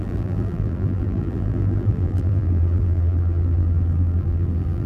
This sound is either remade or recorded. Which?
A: remade